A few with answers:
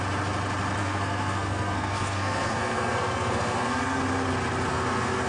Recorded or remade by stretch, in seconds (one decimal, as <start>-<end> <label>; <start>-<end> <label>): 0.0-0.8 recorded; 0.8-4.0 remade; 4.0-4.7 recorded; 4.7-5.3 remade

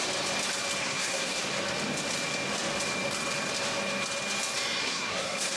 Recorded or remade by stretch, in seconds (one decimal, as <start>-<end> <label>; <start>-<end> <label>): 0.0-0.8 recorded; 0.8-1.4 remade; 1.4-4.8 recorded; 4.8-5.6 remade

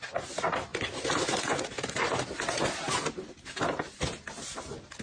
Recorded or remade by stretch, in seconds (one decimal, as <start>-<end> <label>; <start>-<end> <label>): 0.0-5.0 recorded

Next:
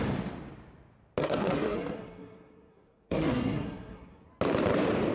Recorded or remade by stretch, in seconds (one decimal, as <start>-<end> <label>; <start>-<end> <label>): 0.0-1.2 recorded; 1.2-4.3 remade; 4.3-5.1 recorded